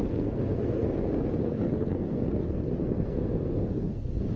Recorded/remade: remade